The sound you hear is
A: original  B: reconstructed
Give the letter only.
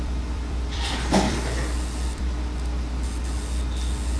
B